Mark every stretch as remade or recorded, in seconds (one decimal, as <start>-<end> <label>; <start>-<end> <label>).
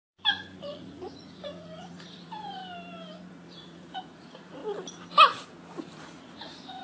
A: 0.0-0.6 recorded; 0.6-2.6 remade; 2.6-3.3 recorded; 3.3-4.6 remade; 4.6-6.0 recorded; 6.0-6.8 remade